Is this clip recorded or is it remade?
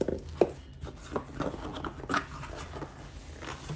recorded